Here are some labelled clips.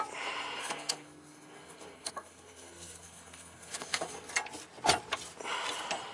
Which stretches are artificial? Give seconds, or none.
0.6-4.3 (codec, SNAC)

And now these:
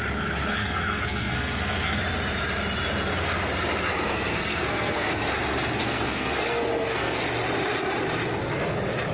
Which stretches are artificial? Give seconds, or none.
0.5-2.0 (codec, SNAC); 3.9-5.1; 5.8-7.2

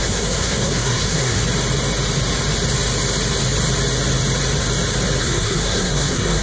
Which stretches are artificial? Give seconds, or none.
0.0-1.4 (codec, SNAC); 5.2-6.4

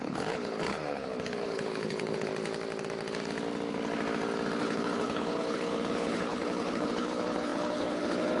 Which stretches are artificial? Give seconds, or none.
0.0-2.3 (codec, HILCodec); 4.6-8.4